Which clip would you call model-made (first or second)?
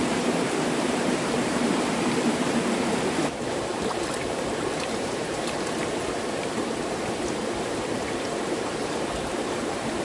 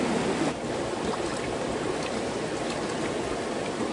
first